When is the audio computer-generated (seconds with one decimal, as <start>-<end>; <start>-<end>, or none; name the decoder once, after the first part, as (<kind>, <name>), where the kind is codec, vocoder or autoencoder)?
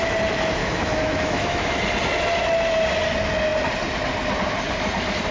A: 0.6-1.8 (autoencoder, DAC-VAE)